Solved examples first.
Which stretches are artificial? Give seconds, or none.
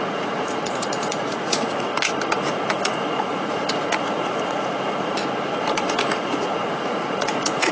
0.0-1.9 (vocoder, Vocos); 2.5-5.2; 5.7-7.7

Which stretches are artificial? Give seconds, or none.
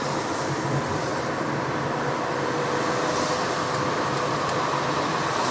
none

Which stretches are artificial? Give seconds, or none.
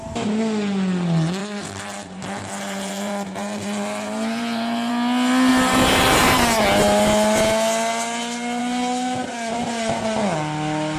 1.4-4.9 (vocoder, BigVGAN v2)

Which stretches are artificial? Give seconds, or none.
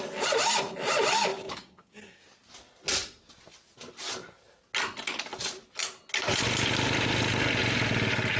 1.3-2.3 (codec, DAC)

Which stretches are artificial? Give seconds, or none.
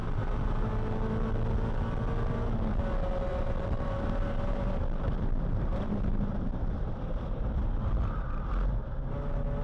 0.0-0.7 (vocoder, BigVGAN v2); 3.3-7.9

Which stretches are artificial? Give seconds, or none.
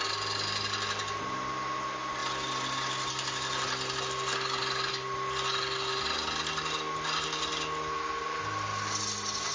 0.0-9.5 (vocoder, BigVGAN v2)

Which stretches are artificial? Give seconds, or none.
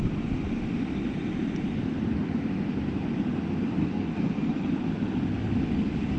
3.8-4.7 (codec, SNAC)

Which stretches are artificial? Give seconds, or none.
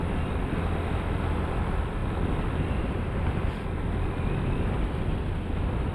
none